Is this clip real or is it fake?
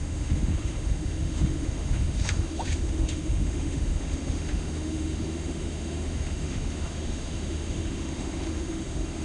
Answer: fake